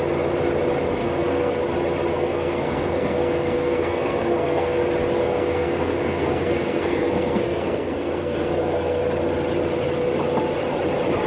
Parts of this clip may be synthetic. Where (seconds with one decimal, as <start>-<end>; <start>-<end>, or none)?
1.0-1.5; 2.1-4.8; 5.2-9.0